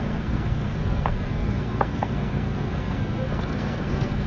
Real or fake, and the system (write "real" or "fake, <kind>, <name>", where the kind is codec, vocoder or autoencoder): fake, codec, SNAC